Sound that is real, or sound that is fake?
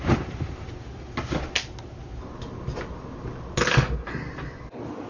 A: real